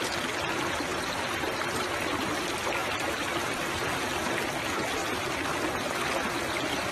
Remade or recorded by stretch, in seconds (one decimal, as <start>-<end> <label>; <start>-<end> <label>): 0.0-2.8 recorded; 2.8-3.7 remade; 3.7-6.9 recorded